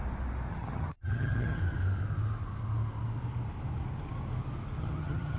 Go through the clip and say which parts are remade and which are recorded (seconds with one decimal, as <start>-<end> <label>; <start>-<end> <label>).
0.0-0.5 recorded; 0.5-1.6 remade; 1.6-4.8 recorded; 4.8-5.4 remade